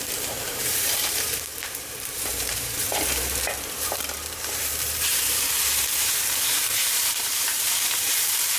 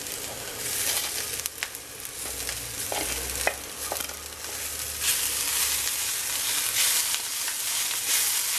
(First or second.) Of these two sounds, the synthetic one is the first